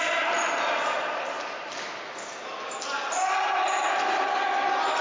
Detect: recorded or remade recorded